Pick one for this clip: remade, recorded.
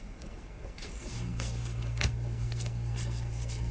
remade